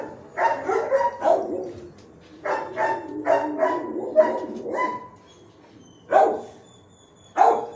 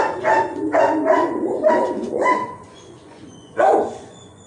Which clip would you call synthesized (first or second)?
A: second